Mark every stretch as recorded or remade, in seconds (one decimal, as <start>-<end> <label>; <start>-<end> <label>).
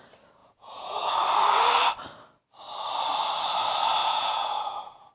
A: 0.0-0.4 recorded; 0.4-1.1 remade; 1.1-4.0 recorded; 4.0-5.1 remade